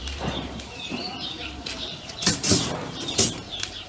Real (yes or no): no